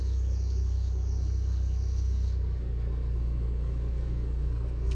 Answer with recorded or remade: remade